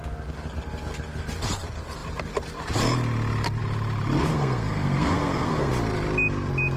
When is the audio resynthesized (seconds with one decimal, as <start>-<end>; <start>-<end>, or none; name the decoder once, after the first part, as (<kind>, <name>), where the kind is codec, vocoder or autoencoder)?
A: 4.3-5.7 (codec, SNAC)

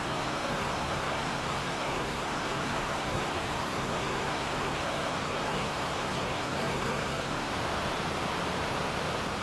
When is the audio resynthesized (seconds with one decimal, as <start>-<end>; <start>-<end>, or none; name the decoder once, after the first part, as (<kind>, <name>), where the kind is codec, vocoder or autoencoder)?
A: 0.0-7.5 (codec, SNAC)

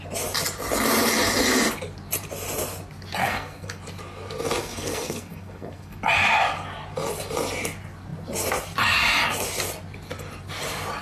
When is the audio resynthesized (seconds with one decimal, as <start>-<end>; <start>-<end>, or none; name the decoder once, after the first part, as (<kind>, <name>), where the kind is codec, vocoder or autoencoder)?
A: 3.2-3.8 (codec, SNAC); 4.6-6.0

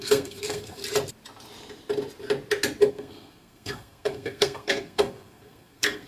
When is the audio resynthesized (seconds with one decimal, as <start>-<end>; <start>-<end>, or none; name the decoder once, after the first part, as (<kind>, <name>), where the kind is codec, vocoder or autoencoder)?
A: 0.0-0.8 (codec, SNAC); 2.9-6.1